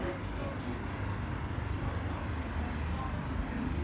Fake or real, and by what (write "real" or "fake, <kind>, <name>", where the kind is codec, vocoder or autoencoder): real